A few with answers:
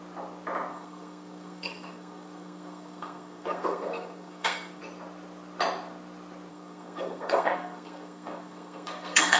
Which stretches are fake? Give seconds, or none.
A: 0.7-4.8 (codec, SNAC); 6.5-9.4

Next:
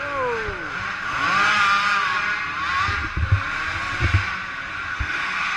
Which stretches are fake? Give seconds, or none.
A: 4.9-5.6 (codec, SNAC)

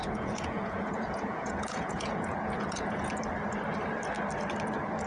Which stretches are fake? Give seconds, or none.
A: 0.0-3.1 (vocoder, Vocos)

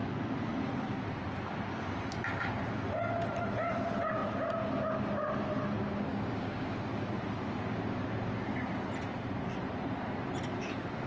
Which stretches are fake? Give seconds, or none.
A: 6.1-6.7 (codec, DAC)

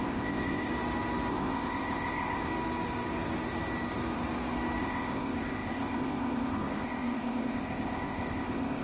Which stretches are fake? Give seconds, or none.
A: 0.0-0.7 (codec, ZipCodec); 1.3-2.5; 4.8-8.8

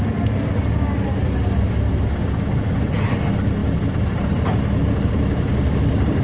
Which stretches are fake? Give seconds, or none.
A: none